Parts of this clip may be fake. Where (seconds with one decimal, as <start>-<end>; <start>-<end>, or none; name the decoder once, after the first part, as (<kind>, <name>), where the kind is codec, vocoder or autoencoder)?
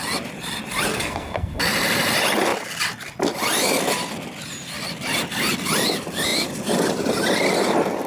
0.9-1.6 (codec, SNAC)